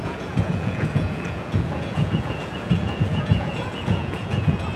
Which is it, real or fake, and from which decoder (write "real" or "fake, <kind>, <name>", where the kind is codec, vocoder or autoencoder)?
fake, vocoder, Vocos